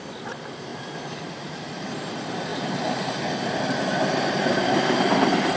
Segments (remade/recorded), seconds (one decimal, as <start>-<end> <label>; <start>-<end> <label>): 0.0-0.7 recorded; 0.7-1.9 remade; 1.9-5.6 recorded